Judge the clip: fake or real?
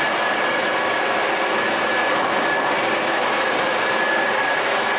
real